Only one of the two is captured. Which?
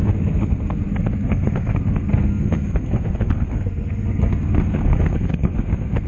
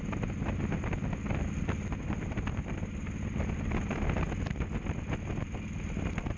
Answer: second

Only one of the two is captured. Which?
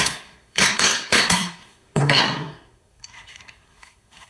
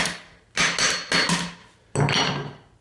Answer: second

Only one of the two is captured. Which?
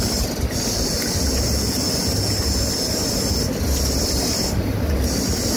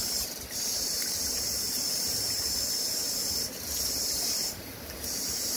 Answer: first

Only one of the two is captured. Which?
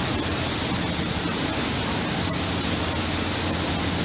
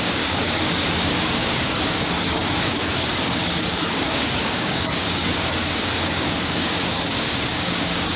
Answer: first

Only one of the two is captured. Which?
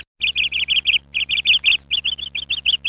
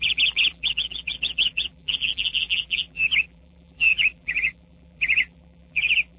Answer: first